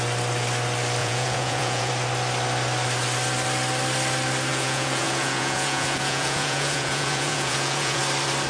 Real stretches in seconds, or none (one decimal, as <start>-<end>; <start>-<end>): 0.0-1.0; 1.9-4.5; 8.0-8.5